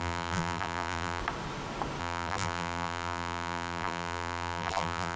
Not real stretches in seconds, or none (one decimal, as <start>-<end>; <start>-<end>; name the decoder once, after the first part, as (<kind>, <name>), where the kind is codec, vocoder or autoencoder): 0.0-1.2 (vocoder, BigVGAN v2); 2.0-5.2